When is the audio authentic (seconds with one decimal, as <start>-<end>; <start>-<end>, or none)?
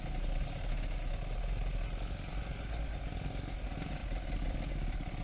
0.0-5.2